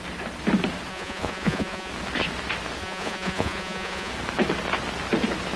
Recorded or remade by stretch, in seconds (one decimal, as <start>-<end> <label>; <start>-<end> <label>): 0.0-0.9 recorded; 0.9-1.9 remade; 1.9-2.8 recorded; 2.8-4.1 remade; 4.1-5.6 recorded